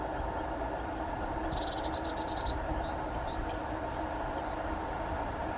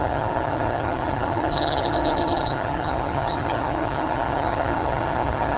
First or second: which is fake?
second